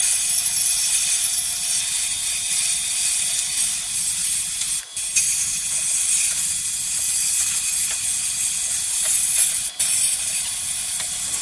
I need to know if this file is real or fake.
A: real